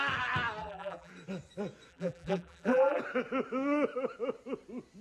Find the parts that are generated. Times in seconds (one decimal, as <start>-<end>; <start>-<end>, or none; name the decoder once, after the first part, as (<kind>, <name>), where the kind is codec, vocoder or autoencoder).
0.6-1.1 (vocoder, BigVGAN v2); 1.9-3.0